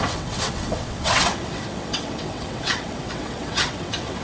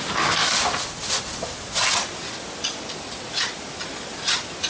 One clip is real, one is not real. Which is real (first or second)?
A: second